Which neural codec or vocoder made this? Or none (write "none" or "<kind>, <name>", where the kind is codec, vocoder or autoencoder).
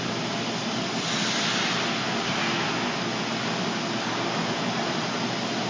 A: none